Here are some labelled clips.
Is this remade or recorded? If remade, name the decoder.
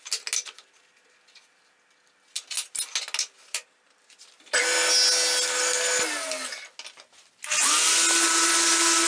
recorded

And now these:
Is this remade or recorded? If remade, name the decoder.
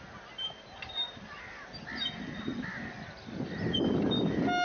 recorded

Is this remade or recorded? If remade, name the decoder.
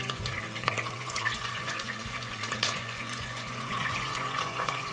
remade, vocoder, Vocos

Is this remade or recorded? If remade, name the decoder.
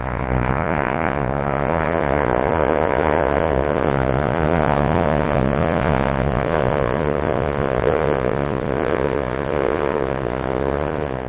remade, vocoder, Vocos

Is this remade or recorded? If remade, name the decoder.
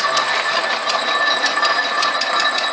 recorded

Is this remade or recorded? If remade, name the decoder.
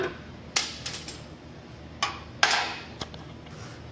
recorded